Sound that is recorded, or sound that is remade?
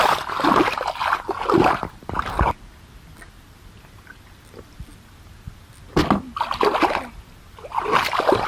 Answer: recorded